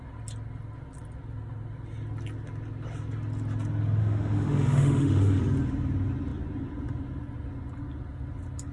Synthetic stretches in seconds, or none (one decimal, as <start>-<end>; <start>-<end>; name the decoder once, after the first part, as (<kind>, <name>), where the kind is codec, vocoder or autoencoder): 4.0-5.4 (autoencoder, DAC-VAE)